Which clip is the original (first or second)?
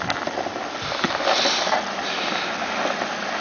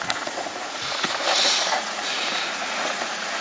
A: first